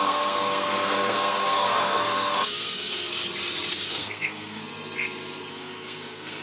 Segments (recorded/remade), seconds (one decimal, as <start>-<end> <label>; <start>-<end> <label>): 0.0-3.1 remade; 3.1-3.7 recorded; 3.7-4.6 remade; 4.6-5.5 recorded; 5.5-6.4 remade